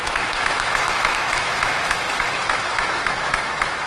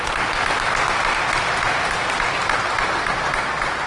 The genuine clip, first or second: second